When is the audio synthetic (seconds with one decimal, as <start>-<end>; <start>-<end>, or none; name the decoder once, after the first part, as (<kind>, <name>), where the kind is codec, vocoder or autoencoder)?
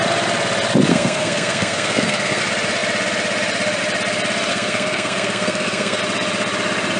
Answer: 0.9-2.4 (codec, SNAC); 4.5-6.0